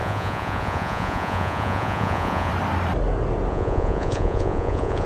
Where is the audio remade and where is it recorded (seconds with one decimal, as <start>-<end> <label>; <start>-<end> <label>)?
0.0-2.5 remade; 2.5-3.5 recorded; 3.5-5.1 remade